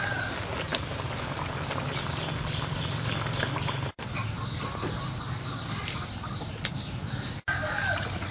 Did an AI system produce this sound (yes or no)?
no